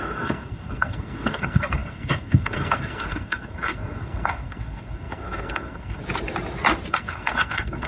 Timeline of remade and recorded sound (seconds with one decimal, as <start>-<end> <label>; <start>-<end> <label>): 0.0-6.0 remade; 6.0-6.9 recorded; 6.9-7.9 remade